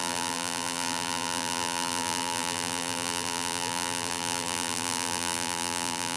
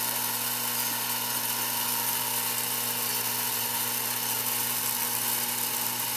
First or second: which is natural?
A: second